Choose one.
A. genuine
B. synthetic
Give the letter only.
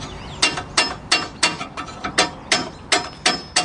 A